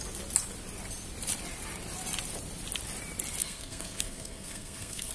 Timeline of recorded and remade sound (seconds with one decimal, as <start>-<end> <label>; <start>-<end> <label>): 0.0-3.4 recorded; 3.4-5.1 remade